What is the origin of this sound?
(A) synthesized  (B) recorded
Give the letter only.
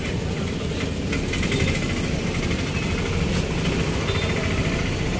B